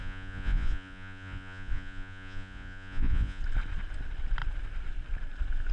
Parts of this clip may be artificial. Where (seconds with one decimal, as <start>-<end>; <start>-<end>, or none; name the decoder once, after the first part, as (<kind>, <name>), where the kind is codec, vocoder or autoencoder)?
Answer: 0.0-3.4 (vocoder, Vocos)